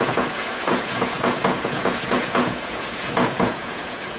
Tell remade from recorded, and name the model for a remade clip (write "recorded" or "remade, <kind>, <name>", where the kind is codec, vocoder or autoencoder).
remade, vocoder, Vocos